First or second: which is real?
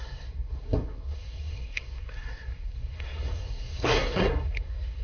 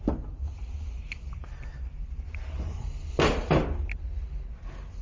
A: second